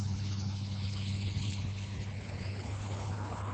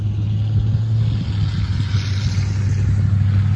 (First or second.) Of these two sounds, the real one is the second